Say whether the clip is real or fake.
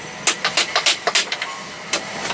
real